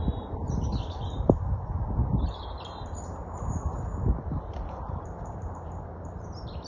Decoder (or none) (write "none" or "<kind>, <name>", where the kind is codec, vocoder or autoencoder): none